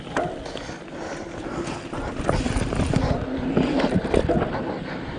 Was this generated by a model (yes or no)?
no